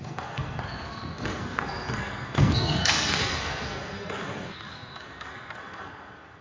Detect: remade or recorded remade